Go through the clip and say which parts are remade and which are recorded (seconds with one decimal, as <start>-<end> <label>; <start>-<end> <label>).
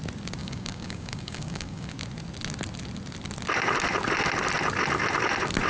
0.0-0.4 recorded; 0.4-1.9 remade; 1.9-5.7 recorded